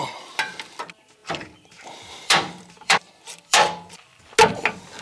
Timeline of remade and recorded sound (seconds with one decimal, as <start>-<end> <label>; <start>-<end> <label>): 0.0-1.2 recorded; 1.2-4.2 remade; 4.2-5.0 recorded